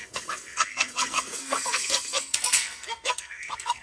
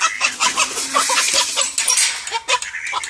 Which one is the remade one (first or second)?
first